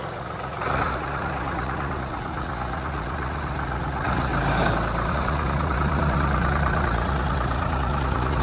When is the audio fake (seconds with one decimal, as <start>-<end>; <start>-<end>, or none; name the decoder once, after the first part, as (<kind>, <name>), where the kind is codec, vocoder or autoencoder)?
0.0-4.3 (vocoder, Vocos); 5.1-8.4